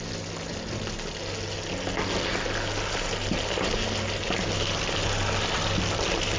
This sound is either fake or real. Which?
real